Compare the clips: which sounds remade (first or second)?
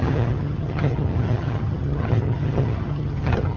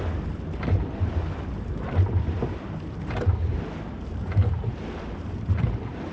first